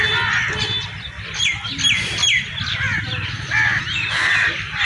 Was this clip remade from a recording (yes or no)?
no